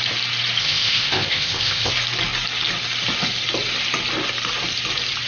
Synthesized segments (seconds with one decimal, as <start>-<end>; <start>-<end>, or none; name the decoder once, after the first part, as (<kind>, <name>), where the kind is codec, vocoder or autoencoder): 0.6-1.9 (codec, ZipCodec)